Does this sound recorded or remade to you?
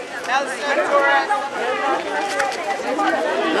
recorded